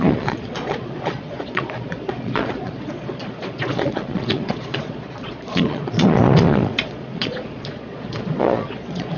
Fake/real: fake